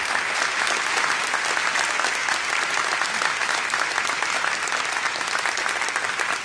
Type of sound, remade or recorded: recorded